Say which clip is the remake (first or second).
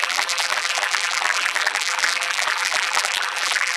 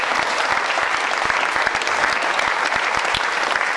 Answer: first